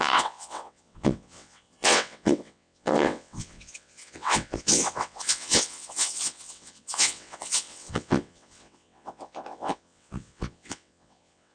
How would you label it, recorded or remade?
remade